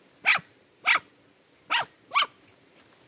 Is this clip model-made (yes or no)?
no